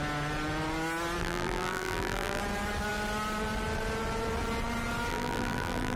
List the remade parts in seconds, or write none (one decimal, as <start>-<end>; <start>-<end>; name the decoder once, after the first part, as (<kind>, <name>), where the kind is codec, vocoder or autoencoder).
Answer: 1.2-2.4 (vocoder, BigVGAN v2); 5.1-6.0